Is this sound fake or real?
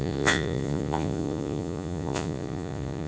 fake